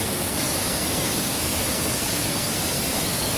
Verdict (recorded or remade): remade